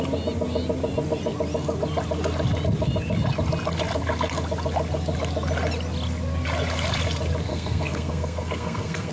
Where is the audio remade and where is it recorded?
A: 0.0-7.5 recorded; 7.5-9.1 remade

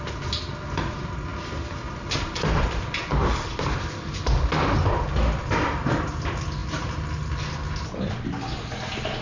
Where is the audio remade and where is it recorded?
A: 0.0-9.2 recorded